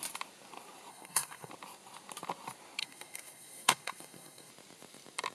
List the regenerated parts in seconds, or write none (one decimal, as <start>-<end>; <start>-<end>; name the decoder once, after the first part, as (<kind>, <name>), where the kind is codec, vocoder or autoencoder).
0.9-1.5 (codec, SNAC); 2.8-4.5